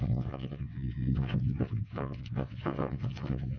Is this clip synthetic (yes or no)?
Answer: yes